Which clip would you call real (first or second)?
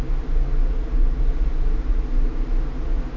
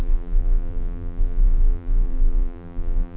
first